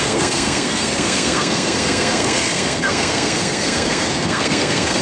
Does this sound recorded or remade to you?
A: remade